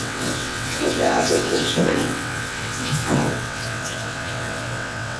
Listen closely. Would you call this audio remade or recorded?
remade